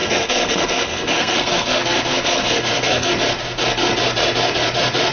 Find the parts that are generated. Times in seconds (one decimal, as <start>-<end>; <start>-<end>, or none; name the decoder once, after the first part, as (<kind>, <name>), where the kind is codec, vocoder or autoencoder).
0.0-3.1 (codec, SNAC)